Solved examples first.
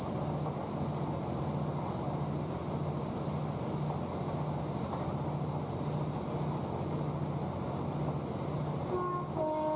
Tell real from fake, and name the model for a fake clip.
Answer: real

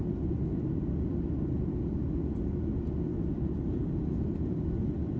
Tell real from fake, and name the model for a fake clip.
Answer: real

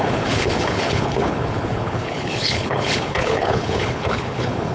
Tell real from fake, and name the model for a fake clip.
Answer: fake, codec, HILCodec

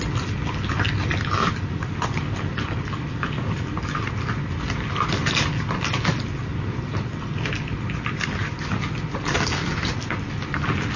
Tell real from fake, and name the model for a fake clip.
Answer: real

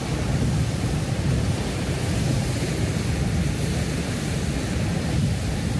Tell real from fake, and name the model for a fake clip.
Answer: real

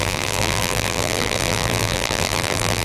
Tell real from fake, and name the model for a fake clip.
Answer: fake, vocoder, BigVGAN v2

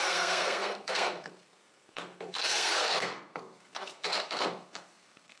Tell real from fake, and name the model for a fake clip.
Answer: fake, codec, SNAC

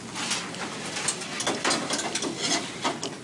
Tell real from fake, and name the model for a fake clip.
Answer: real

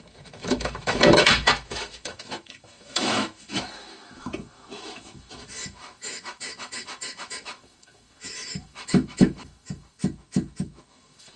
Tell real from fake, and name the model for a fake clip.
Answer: fake, autoencoder, DAC-VAE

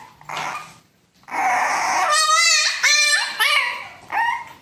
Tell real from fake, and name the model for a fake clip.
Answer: real